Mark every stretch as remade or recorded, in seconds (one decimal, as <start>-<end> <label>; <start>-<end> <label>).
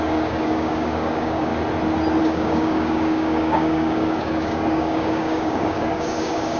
0.0-1.5 remade; 1.5-2.2 recorded; 2.2-6.6 remade